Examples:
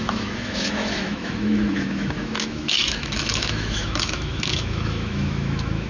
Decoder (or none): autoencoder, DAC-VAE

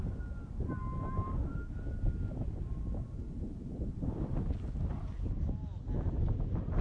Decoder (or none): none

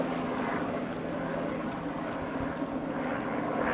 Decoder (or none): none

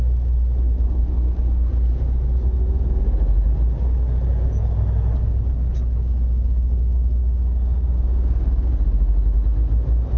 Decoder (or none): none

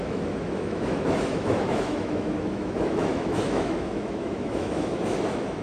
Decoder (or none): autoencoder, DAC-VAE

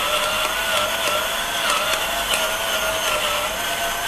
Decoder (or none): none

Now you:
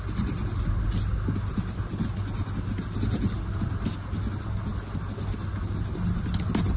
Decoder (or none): none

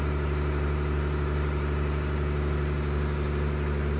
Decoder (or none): none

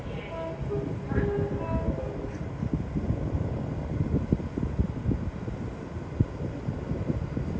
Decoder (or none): none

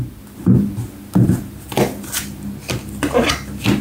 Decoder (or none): none